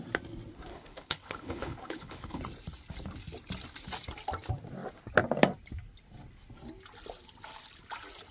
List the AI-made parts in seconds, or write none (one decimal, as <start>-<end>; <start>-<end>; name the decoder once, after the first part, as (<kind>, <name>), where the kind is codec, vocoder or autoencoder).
0.7-2.4 (codec, HILCodec)